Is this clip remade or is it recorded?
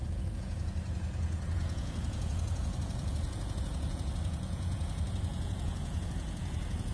remade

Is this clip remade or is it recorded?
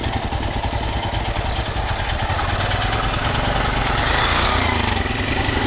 recorded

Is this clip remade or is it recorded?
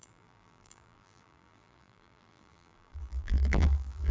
remade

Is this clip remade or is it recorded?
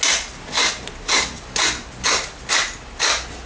recorded